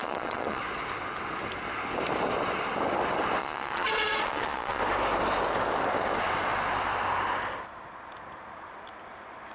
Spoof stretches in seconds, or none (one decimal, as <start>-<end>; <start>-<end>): 0.0-0.6; 3.4-4.8